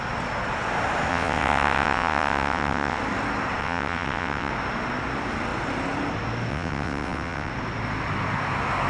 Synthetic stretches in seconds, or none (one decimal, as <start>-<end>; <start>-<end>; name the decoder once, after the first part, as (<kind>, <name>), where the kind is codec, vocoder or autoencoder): 1.1-3.0 (vocoder, WaveNeXt); 3.6-4.5; 6.5-7.5